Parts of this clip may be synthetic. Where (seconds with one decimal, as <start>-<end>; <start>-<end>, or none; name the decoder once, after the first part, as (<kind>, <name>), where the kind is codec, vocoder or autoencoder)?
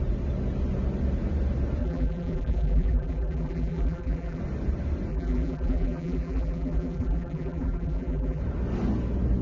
1.8-4.4 (vocoder, BigVGAN v2); 5.1-8.4